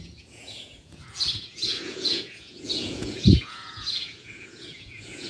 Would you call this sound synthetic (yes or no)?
yes